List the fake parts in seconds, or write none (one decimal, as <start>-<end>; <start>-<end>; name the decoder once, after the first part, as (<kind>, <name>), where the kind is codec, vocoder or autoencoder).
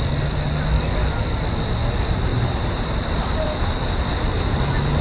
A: 2.3-3.7 (vocoder, BigVGAN v2)